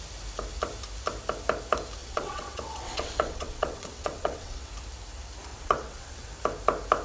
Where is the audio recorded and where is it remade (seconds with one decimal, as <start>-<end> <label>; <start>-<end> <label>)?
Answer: 0.0-2.0 recorded; 2.0-4.7 remade; 4.7-5.5 recorded; 5.5-6.3 remade; 6.3-7.0 recorded